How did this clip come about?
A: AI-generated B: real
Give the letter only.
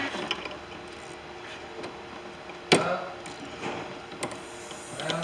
B